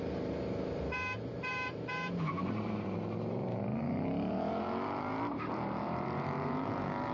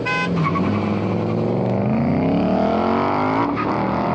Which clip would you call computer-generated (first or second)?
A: first